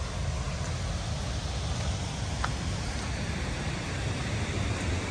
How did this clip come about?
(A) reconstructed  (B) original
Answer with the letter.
B